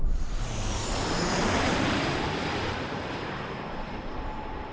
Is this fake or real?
fake